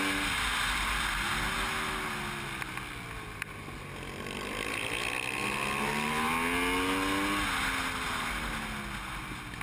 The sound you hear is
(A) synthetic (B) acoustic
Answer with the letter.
B